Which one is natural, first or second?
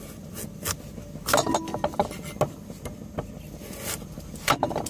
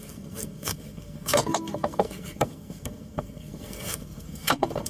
first